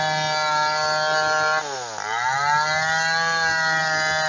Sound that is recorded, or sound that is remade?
recorded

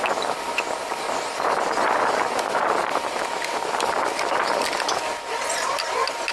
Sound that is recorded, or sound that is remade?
recorded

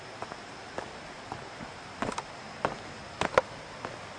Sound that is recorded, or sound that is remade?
recorded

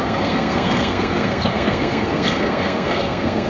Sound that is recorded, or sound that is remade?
remade